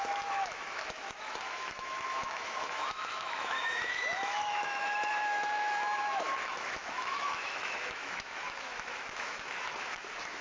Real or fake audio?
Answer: fake